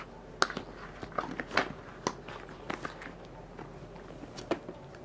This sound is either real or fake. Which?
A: real